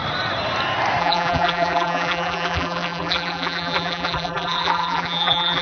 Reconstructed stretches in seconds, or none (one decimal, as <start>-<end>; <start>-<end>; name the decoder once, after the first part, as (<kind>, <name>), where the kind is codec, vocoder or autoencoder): 1.0-5.6 (vocoder, BigVGAN v2)